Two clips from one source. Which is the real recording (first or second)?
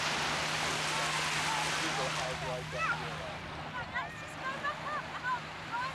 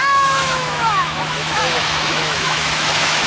first